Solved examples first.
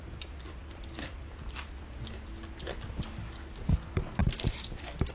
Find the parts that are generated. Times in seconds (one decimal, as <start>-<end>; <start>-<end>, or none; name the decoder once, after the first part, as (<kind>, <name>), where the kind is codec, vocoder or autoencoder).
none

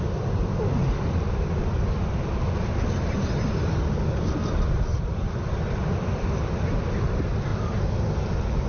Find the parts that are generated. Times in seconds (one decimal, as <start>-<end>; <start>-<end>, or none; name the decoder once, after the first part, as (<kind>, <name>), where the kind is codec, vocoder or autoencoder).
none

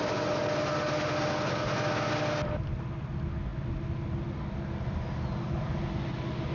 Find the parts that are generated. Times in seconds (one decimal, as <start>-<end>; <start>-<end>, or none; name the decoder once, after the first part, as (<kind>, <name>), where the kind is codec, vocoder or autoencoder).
none

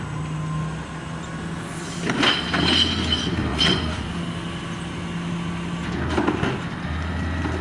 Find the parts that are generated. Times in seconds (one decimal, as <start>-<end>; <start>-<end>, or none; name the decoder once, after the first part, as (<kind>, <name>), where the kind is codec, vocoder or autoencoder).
3.5-4.1 (vocoder, Vocos)

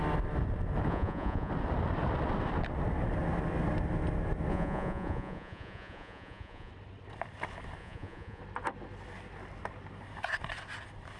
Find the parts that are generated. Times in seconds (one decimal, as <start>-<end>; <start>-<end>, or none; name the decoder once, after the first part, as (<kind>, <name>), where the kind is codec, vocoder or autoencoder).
0.9-1.5 (vocoder, Vocos); 4.5-6.7; 7.8-8.4

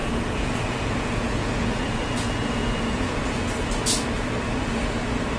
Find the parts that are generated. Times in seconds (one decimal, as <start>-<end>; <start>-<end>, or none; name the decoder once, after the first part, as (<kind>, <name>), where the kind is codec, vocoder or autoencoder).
0.0-3.2 (vocoder, Vocos)

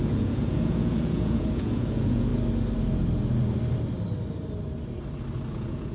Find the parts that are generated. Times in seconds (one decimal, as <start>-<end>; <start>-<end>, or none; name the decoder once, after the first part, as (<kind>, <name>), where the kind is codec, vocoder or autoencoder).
0.0-2.3 (vocoder, Vocos); 5.5-5.9